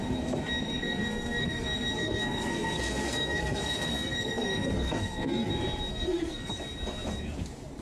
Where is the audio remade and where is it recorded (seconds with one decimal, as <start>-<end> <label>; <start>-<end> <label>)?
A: 0.0-0.8 recorded; 0.8-5.5 remade; 5.5-5.9 recorded; 5.9-6.5 remade; 6.5-7.8 recorded